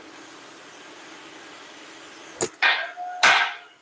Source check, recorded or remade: recorded